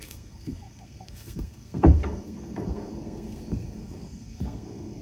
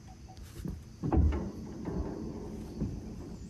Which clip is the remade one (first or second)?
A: first